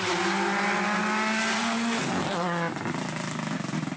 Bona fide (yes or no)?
yes